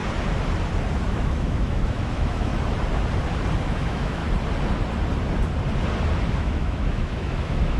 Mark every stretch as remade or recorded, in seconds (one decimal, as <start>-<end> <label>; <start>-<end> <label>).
0.0-1.1 recorded; 1.1-2.5 remade; 2.5-3.6 recorded; 3.6-4.2 remade; 4.2-6.4 recorded; 6.4-7.8 remade